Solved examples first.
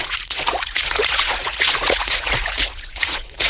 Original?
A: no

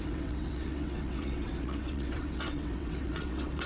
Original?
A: no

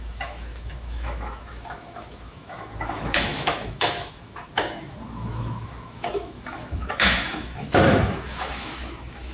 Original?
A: no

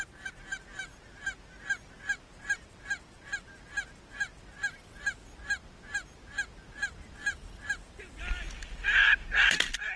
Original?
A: yes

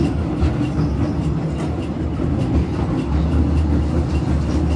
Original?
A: yes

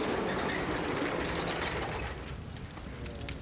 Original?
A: yes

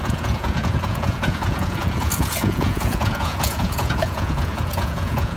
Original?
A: no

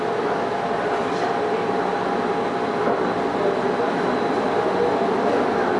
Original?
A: yes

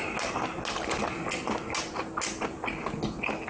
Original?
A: yes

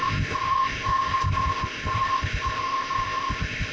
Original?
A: no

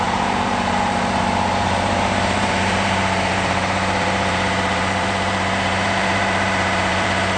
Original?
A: no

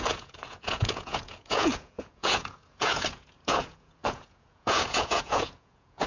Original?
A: no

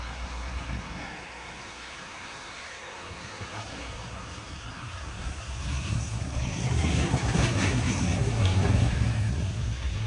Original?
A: no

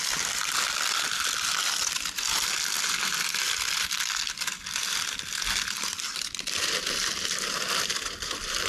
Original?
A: yes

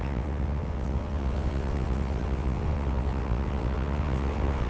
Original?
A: no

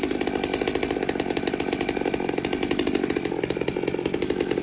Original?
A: yes